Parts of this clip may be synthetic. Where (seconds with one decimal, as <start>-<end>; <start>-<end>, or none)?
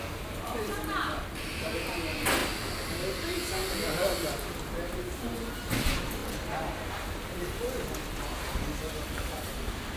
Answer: none